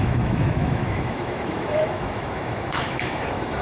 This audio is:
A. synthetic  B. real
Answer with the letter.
A